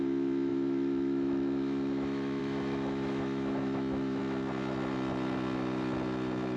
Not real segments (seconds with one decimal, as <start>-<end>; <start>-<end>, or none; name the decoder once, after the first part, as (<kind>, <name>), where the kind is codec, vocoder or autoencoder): 0.0-4.2 (autoencoder, DAC-VAE)

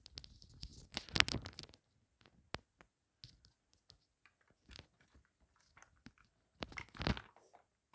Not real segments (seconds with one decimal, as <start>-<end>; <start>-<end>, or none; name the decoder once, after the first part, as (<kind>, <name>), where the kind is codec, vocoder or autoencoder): none

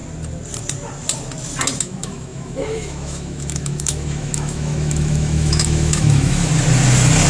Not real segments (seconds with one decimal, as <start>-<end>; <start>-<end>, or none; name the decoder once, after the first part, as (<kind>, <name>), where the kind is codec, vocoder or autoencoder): 1.8-6.5 (autoencoder, DAC-VAE)

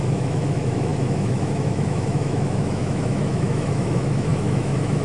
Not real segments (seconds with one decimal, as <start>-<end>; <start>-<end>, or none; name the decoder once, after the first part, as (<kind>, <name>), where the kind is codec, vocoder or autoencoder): 0.0-5.0 (autoencoder, DAC-VAE)

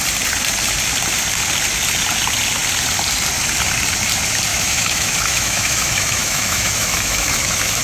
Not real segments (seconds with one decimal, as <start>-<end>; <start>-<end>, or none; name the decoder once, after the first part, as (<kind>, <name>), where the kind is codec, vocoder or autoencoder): 4.5-7.8 (autoencoder, DAC-VAE)